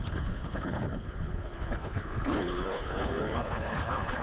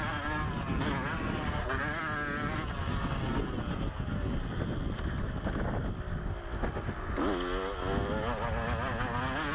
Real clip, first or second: second